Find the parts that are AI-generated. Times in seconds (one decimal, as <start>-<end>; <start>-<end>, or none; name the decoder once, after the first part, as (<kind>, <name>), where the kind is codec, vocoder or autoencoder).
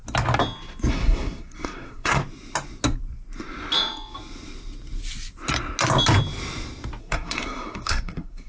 0.9-2.2 (codec, SNAC); 7.0-8.5